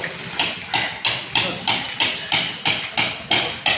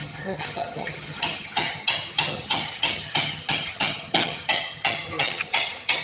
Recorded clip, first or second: first